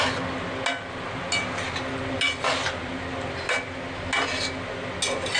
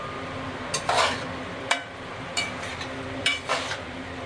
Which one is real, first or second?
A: first